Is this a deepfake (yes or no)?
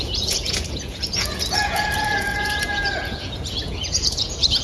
yes